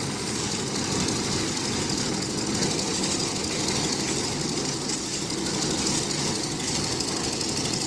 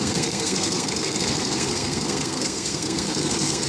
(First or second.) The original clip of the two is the first